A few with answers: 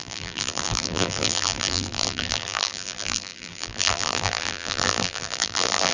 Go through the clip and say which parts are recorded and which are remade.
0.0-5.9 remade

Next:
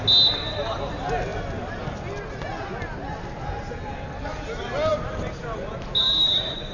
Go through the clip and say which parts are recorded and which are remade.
0.0-6.7 recorded

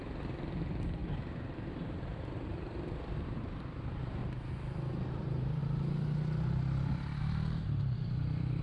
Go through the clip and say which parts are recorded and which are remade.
0.0-4.2 remade; 4.2-5.1 recorded; 5.1-5.6 remade; 5.6-7.2 recorded; 7.2-8.6 remade

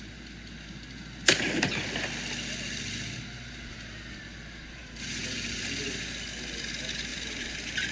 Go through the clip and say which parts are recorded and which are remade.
0.0-4.8 recorded; 4.8-5.6 remade; 5.6-7.1 recorded; 7.1-7.9 remade